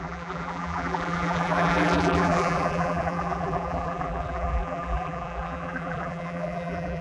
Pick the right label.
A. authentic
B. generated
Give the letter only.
B